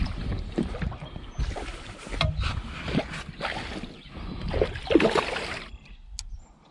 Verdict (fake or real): real